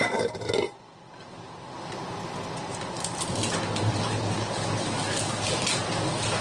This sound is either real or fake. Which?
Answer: real